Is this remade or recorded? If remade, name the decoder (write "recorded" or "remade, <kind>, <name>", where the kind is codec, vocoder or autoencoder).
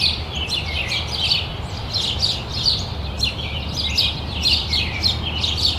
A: recorded